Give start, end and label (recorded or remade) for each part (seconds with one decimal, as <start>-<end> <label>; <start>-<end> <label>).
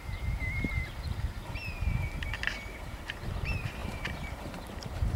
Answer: 0.0-1.1 remade; 1.1-3.0 recorded; 3.0-5.2 remade